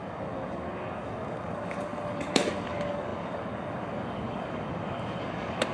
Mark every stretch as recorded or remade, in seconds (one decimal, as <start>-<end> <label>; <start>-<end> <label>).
0.0-5.7 remade